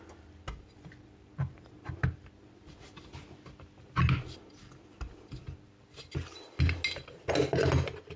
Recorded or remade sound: recorded